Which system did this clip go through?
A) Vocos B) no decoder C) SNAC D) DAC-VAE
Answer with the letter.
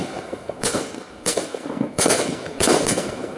C